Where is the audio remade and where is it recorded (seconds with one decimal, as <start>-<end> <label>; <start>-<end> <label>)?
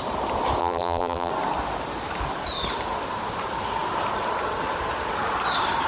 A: 0.0-0.6 recorded; 0.6-1.3 remade; 1.3-5.9 recorded